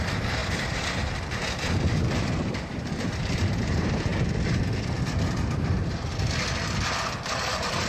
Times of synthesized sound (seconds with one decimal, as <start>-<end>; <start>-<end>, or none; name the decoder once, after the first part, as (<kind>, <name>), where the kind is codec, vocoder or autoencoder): 0.0-4.1 (vocoder, BigVGAN v2); 7.1-7.9